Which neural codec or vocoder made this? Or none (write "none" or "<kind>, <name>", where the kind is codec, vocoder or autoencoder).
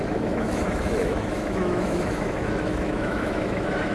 autoencoder, DAC-VAE